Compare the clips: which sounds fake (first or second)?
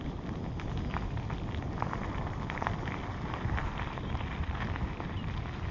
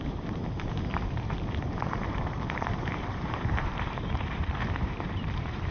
second